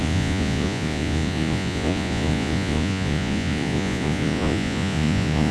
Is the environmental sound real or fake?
fake